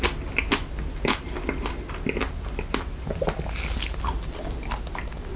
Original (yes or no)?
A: yes